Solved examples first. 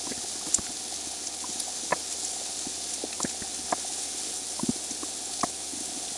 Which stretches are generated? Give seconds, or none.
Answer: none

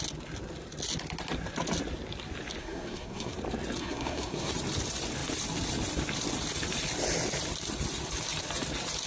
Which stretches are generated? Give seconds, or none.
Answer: 2.6-3.3 (codec, SNAC); 3.8-4.5

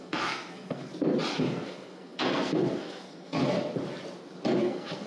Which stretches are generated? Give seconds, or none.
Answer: 0.0-0.9 (codec, SNAC); 1.4-3.4; 4.6-5.1

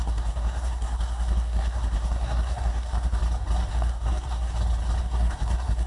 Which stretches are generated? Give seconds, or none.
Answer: 0.0-3.2 (codec, SNAC); 3.7-4.5; 5.0-5.9

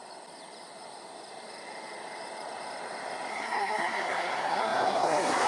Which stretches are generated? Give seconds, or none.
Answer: 3.3-5.5 (codec, SNAC)

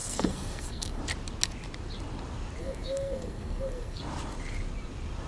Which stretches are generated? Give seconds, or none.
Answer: 0.0-1.0 (codec, SNAC); 2.6-4.0

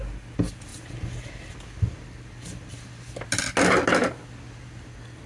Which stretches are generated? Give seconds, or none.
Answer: none